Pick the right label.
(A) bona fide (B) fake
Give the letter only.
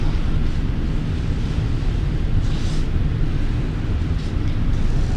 A